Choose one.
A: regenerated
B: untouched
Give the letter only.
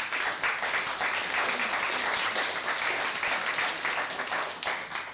B